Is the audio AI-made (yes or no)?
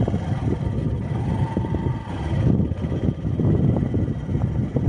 no